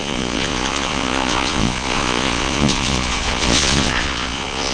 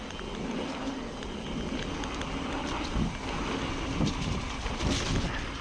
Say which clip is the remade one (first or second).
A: first